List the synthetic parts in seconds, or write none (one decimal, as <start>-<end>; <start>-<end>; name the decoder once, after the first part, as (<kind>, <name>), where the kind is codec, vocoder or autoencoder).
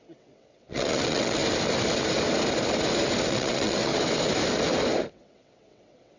0.0-1.4 (vocoder, WaveNeXt); 3.3-3.9; 5.1-6.2